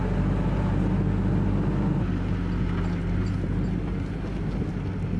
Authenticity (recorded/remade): recorded